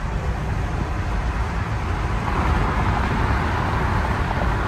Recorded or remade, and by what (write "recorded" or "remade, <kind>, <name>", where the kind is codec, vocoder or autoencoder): recorded